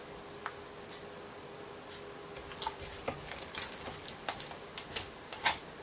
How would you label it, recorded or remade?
recorded